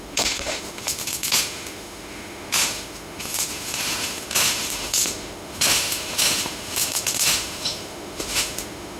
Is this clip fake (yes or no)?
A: yes